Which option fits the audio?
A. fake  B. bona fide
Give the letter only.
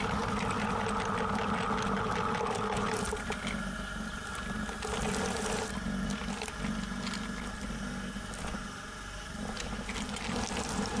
B